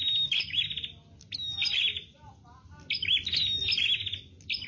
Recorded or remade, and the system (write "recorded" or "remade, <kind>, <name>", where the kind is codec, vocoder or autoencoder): recorded